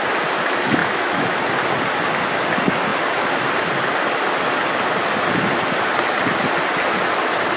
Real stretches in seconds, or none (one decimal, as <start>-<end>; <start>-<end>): 0.0-0.8; 1.4-7.6